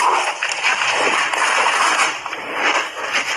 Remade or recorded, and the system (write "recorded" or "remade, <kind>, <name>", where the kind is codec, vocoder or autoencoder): remade, vocoder, BigVGAN v2